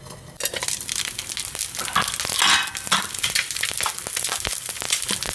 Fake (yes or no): no